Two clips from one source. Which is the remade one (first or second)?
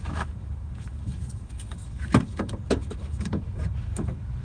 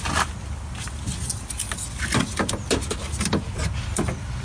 first